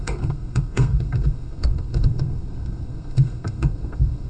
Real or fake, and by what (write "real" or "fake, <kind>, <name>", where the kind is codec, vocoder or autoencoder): fake, codec, SNAC